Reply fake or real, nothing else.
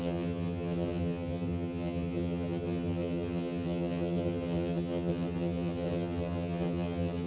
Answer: fake